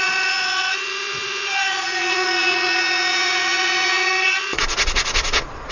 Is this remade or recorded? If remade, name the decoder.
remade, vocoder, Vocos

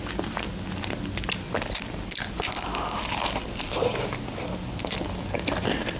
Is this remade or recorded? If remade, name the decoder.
recorded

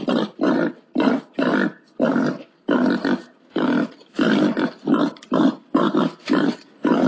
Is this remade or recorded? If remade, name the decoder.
recorded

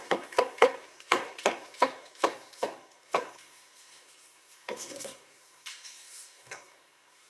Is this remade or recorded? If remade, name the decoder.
remade, codec, SNAC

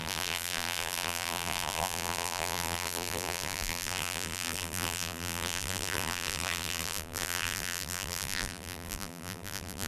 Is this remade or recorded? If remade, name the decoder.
remade, vocoder, BigVGAN v2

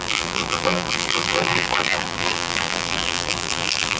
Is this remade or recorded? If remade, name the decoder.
remade, vocoder, BigVGAN v2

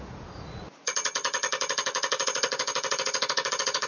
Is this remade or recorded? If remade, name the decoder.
remade, vocoder, Vocos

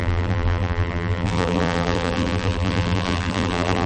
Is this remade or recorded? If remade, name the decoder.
remade, vocoder, BigVGAN v2